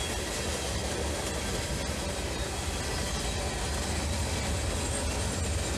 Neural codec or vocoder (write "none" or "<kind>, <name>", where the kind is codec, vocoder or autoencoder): none